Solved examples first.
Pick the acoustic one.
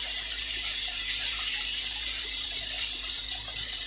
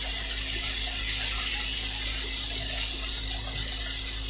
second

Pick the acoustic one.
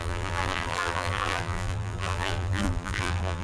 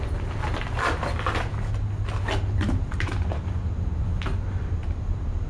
second